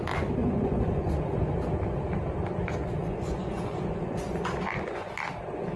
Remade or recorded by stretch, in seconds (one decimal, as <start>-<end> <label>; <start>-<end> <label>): 0.0-0.4 recorded; 0.4-1.1 remade; 1.1-3.0 recorded; 3.0-5.1 remade; 5.1-5.8 recorded